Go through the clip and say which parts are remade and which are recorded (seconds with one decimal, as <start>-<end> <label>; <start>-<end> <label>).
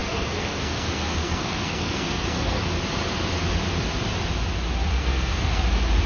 0.0-2.6 remade; 2.6-4.9 recorded; 4.9-5.6 remade; 5.6-6.1 recorded